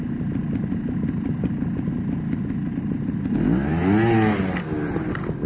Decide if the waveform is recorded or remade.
recorded